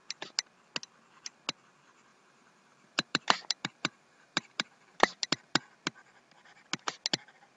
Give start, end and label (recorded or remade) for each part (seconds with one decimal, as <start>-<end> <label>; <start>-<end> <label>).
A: 0.0-2.1 recorded; 2.1-5.6 remade; 5.6-7.6 recorded